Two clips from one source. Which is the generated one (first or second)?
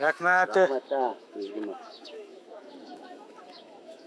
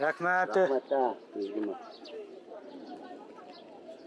first